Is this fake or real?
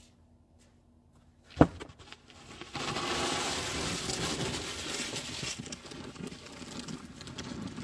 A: real